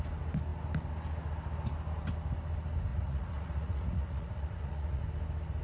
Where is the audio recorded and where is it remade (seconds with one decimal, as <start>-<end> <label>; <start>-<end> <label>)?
0.0-2.9 recorded; 2.9-5.0 remade; 5.0-5.6 recorded